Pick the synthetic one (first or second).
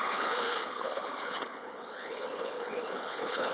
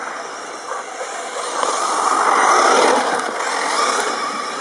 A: first